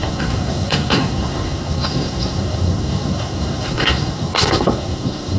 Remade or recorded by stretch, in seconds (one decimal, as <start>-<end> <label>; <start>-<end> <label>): 0.0-5.4 remade